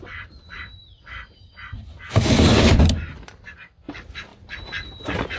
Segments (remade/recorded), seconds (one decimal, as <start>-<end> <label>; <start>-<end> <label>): 0.0-5.4 recorded